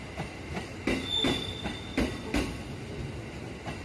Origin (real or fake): real